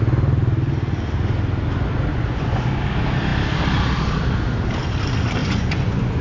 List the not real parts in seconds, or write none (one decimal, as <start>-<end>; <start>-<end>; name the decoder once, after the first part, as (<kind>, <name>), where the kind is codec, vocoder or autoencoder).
2.1-2.6 (vocoder, Vocos); 5.4-6.2